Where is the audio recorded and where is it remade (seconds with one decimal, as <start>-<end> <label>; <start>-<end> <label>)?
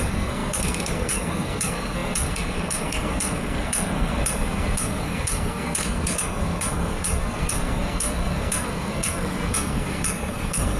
0.0-10.8 remade